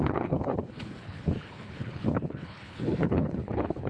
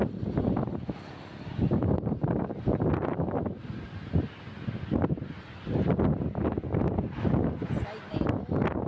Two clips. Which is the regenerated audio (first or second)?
first